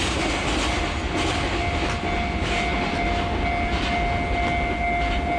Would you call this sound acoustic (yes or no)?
yes